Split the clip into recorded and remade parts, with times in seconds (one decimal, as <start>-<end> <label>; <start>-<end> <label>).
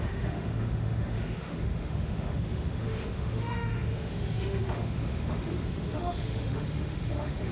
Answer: 0.0-7.5 remade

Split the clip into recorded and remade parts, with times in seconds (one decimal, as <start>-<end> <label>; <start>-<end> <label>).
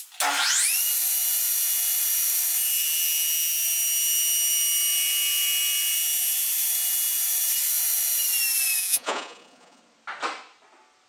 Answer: 0.0-8.8 recorded; 8.8-9.8 remade; 9.8-11.1 recorded